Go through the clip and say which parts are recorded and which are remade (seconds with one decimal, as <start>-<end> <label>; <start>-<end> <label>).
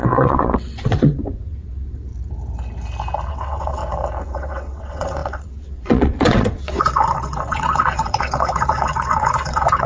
0.0-2.1 remade; 2.1-3.3 recorded; 3.3-3.8 remade; 3.8-4.3 recorded; 4.3-9.9 remade